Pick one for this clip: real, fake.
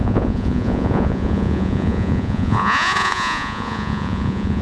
fake